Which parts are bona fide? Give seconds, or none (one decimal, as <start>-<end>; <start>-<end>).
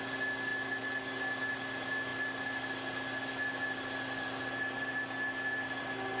0.0-6.2